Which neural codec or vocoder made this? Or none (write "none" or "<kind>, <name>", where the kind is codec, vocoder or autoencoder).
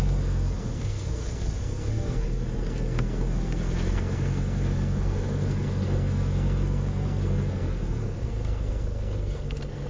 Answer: codec, SNAC